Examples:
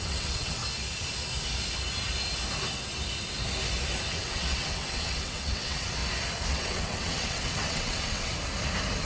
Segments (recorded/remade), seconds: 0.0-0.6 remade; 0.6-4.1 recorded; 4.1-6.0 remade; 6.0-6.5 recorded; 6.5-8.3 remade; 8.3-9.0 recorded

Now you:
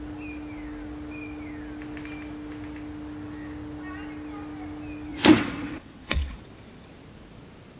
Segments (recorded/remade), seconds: 0.0-5.1 recorded; 5.1-6.4 remade; 6.4-7.8 recorded

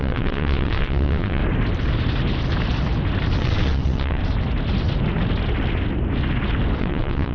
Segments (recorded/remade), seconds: 0.0-1.4 remade; 1.4-3.4 recorded; 3.4-4.2 remade; 4.2-6.8 recorded; 6.8-7.3 remade

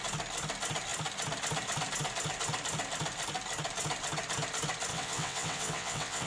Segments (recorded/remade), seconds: 0.0-4.9 recorded; 4.9-6.3 remade

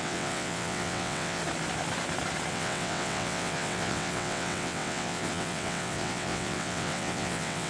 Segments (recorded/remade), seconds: 0.0-1.4 remade; 1.4-2.5 recorded; 2.5-7.7 remade